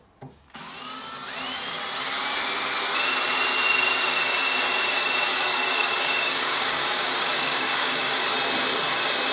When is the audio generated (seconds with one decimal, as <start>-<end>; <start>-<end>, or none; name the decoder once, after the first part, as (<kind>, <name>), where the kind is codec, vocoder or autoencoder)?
5.3-8.2 (codec, DAC)